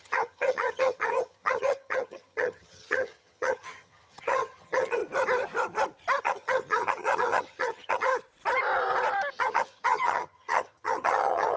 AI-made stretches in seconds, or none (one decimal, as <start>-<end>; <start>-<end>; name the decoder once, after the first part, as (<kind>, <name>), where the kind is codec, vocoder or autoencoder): 0.0-5.0 (vocoder, HiFi-GAN); 6.2-8.1; 9.3-11.6